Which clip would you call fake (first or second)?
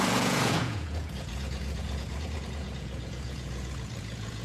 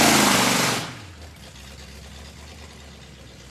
first